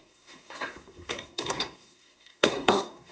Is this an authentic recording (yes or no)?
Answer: no